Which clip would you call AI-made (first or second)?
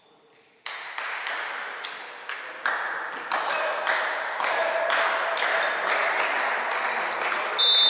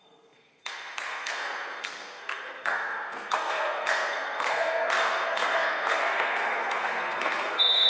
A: second